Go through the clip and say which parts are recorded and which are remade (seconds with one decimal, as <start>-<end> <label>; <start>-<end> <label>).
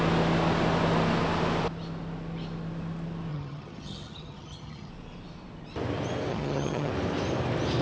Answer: 0.0-3.3 recorded; 3.3-4.9 remade; 4.9-6.3 recorded; 6.3-6.9 remade; 6.9-7.8 recorded